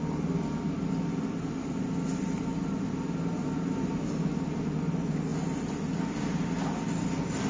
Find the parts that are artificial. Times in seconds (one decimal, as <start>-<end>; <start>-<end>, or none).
none